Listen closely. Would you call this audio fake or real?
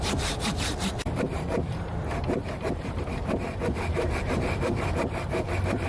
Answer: fake